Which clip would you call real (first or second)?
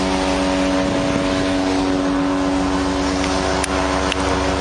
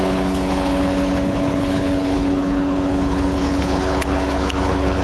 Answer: first